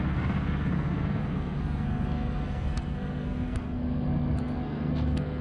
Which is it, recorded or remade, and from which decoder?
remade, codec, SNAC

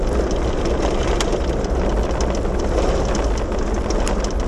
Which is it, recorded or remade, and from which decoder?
recorded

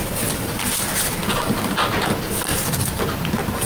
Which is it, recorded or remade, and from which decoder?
recorded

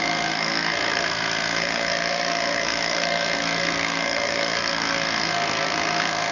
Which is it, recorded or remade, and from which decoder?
remade, codec, SNAC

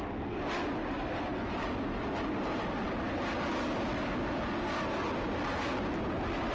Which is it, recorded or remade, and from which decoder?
recorded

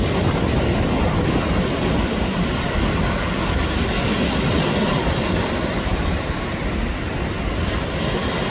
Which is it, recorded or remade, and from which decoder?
recorded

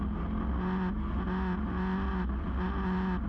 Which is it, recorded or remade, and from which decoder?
recorded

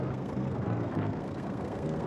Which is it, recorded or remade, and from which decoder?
remade, codec, SNAC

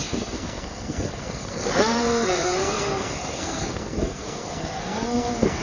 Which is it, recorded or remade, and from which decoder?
remade, codec, SNAC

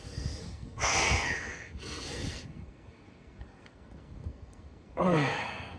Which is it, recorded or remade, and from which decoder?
remade, codec, SNAC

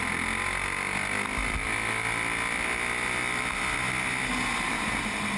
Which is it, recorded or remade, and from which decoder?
recorded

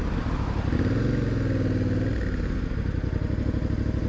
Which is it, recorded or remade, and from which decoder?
recorded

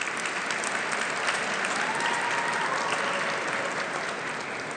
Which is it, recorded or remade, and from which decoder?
recorded